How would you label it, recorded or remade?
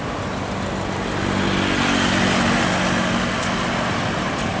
recorded